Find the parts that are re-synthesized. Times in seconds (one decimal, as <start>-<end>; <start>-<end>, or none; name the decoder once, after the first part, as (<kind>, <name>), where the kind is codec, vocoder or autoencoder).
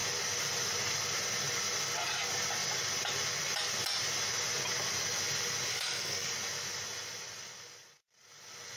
5.7-6.3 (codec, SNAC)